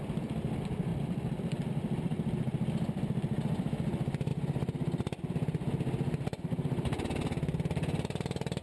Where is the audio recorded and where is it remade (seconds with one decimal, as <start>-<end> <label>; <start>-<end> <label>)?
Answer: 0.0-0.9 recorded; 0.9-1.7 remade; 1.7-8.6 recorded